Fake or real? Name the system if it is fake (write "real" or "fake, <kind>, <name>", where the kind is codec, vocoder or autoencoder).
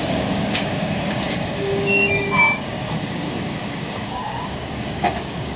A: fake, codec, DAC